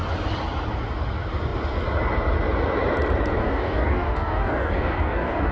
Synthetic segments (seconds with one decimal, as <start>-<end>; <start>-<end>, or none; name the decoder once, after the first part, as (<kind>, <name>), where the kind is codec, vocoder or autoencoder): 3.4-5.5 (codec, DAC)